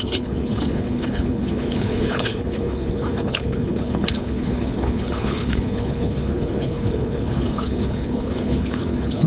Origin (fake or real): fake